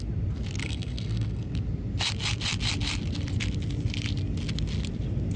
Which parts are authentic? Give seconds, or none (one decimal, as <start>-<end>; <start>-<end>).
0.0-0.6; 1.5-5.4